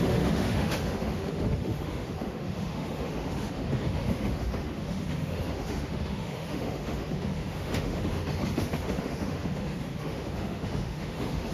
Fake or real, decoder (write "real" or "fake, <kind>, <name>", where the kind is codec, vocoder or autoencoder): fake, autoencoder, DAC-VAE